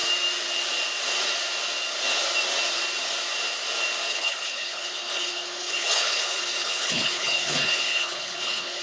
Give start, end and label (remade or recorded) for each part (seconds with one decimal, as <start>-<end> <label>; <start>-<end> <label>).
0.0-4.1 recorded; 4.1-8.8 remade